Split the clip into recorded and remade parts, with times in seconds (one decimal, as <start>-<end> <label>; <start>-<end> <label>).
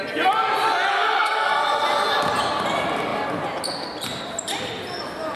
0.0-0.9 recorded; 0.9-1.6 remade; 1.6-5.4 recorded